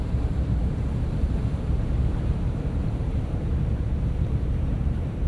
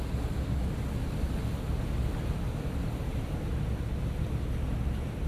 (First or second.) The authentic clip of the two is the second